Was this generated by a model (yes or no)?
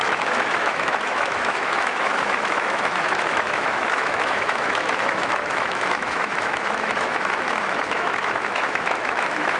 yes